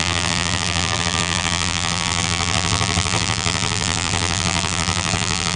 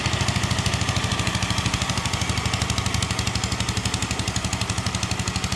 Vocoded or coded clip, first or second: first